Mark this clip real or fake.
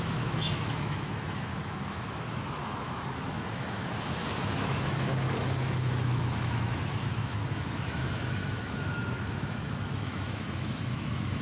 fake